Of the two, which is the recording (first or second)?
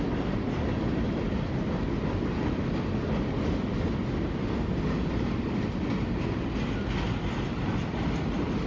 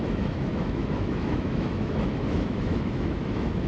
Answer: first